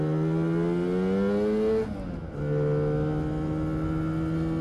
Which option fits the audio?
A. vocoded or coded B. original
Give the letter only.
B